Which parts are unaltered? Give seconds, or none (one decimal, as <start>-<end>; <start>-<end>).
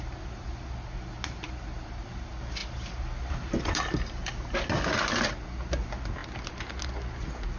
0.0-7.6